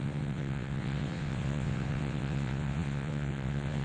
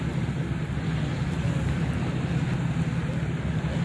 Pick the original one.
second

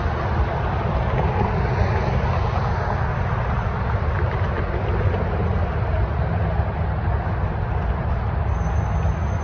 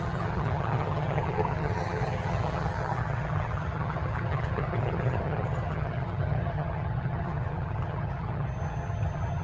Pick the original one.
first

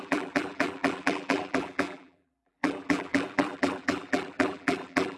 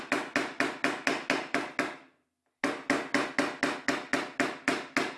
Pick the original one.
second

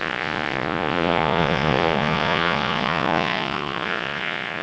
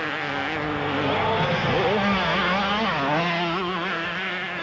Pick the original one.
second